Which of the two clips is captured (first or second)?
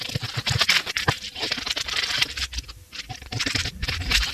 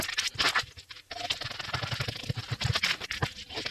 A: second